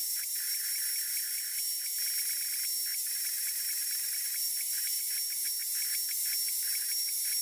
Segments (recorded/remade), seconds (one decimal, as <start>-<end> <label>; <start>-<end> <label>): 0.0-0.8 remade; 0.8-2.9 recorded; 2.9-5.0 remade; 5.0-7.4 recorded